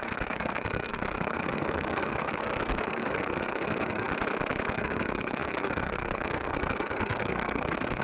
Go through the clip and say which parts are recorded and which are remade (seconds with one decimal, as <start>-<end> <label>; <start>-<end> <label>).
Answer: 0.0-4.1 remade; 4.1-4.7 recorded; 4.7-8.0 remade

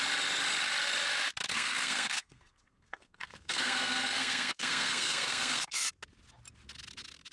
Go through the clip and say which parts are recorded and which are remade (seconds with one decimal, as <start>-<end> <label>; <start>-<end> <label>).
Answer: 0.0-1.5 recorded; 1.5-5.9 remade; 5.9-7.3 recorded

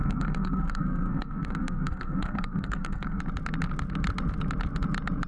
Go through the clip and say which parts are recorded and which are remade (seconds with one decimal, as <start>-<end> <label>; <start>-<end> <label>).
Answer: 0.0-3.2 remade; 3.2-5.3 recorded